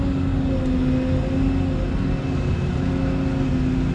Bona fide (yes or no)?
yes